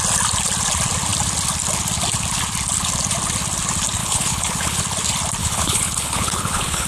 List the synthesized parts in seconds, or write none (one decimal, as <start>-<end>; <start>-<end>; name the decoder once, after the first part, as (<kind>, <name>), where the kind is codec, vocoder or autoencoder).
4.0-4.8 (codec, HILCodec); 5.4-6.9